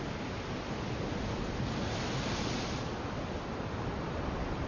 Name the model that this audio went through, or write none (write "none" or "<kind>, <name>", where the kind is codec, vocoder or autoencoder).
none